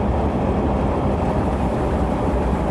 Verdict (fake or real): fake